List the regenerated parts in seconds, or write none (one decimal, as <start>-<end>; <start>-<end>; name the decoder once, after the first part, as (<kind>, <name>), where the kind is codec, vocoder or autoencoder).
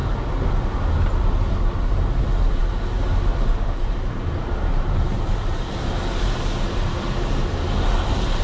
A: none